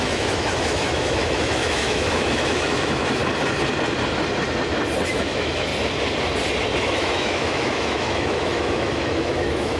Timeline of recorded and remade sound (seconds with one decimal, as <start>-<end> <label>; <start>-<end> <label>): 0.0-3.2 remade; 3.2-5.1 recorded; 5.1-5.7 remade; 5.7-6.8 recorded; 6.8-9.8 remade